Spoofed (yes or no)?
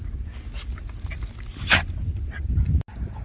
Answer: no